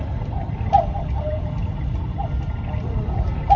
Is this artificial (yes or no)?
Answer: no